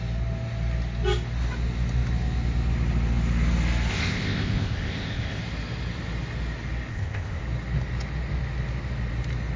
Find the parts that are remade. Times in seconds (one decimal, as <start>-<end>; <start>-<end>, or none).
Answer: 3.9-5.4; 6.9-7.4